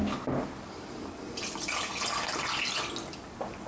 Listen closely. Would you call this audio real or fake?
real